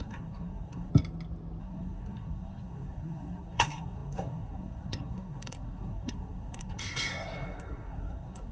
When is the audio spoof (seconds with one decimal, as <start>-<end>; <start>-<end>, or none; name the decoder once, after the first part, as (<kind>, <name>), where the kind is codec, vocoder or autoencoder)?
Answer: 0.0-0.9 (codec, SNAC); 1.6-8.5